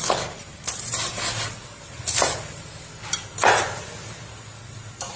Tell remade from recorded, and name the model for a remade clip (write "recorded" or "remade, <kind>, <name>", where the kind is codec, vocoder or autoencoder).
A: recorded